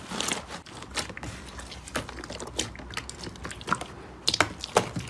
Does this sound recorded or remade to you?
recorded